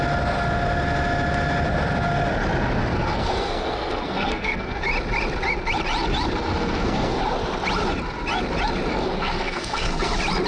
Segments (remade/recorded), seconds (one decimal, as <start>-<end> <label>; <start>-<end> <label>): 0.0-2.8 recorded; 2.8-4.8 remade; 4.8-6.5 recorded; 6.5-7.2 remade; 7.2-8.9 recorded; 8.9-10.1 remade; 10.1-10.5 recorded